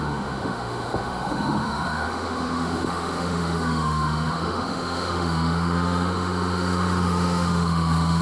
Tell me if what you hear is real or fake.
fake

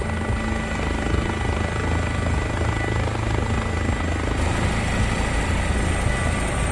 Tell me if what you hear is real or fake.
real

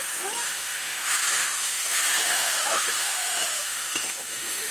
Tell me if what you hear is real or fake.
fake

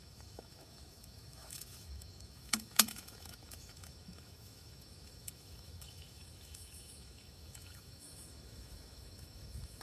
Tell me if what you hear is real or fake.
fake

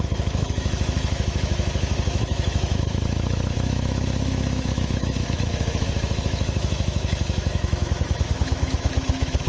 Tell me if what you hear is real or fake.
fake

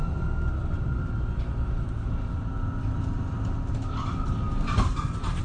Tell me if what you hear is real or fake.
real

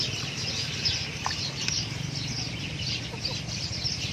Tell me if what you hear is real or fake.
real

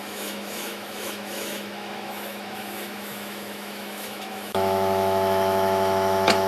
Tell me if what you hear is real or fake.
fake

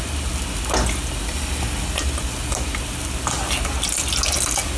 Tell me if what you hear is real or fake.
real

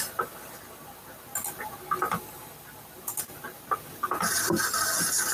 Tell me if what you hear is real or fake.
real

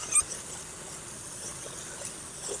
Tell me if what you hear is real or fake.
real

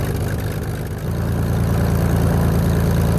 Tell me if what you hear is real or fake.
real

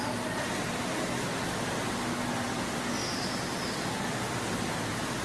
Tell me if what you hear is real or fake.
real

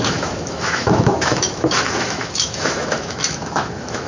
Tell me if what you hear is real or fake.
fake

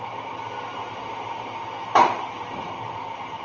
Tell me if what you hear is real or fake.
real